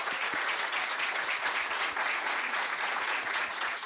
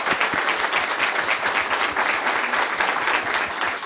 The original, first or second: second